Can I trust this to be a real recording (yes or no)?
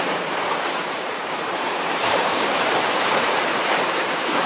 no